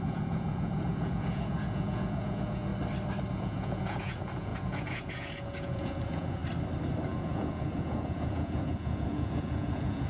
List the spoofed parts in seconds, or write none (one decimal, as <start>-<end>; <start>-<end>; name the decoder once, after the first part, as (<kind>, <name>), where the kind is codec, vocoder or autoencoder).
0.0-2.7 (vocoder, Vocos); 3.3-6.4; 7.0-10.1